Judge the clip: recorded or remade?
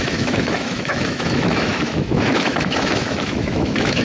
remade